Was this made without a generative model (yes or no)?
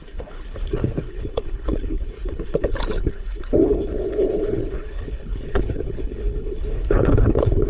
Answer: no